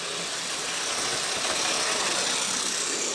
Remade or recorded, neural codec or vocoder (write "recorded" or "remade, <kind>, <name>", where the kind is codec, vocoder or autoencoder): recorded